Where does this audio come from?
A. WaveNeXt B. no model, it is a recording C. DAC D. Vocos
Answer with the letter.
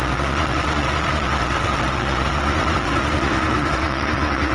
D